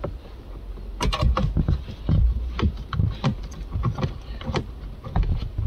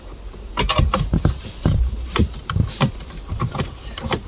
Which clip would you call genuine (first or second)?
first